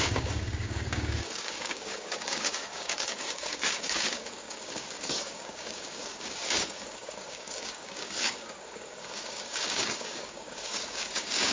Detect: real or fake fake